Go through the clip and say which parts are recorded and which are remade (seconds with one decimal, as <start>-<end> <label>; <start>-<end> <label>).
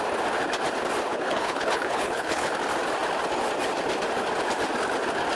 0.0-1.1 recorded; 1.1-2.5 remade; 2.5-5.4 recorded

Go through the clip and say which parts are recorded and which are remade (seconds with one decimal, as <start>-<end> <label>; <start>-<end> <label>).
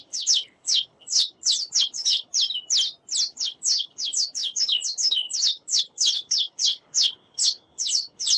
0.0-2.3 remade; 2.3-3.3 recorded; 3.3-8.4 remade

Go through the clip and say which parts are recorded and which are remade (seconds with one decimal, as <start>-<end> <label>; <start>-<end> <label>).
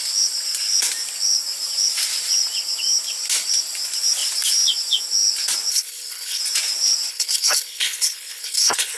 0.0-5.7 recorded; 5.7-6.4 remade; 6.4-7.1 recorded; 7.1-9.0 remade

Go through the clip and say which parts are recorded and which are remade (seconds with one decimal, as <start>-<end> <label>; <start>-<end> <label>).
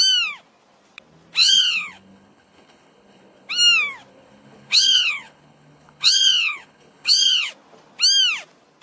0.0-1.4 recorded; 1.4-3.5 remade; 3.5-4.1 recorded; 4.1-7.5 remade; 7.5-8.8 recorded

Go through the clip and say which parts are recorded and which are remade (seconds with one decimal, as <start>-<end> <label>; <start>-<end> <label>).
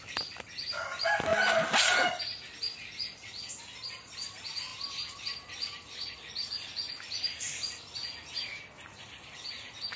0.0-10.0 recorded